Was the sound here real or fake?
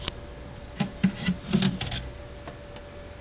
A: real